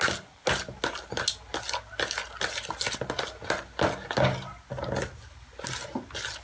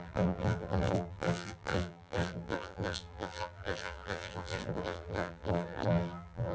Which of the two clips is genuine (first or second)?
first